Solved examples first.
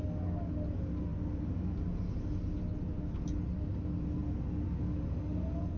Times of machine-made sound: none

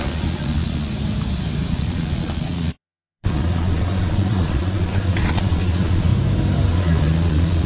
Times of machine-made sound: 0.0-0.9; 1.7-6.1; 6.7-7.7

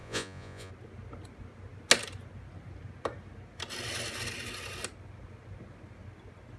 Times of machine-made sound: 0.0-0.7

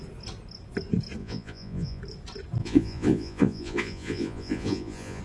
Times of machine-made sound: 1.2-2.0; 2.6-5.2

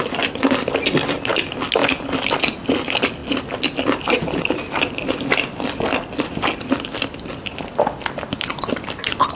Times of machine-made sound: none